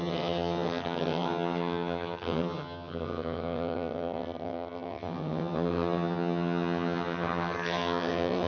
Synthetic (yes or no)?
yes